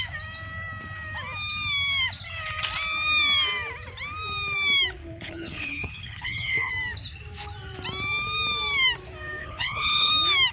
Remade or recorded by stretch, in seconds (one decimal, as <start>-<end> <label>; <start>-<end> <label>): 0.0-5.0 recorded; 5.0-6.7 remade; 6.7-9.4 recorded; 9.4-10.1 remade; 10.1-10.5 recorded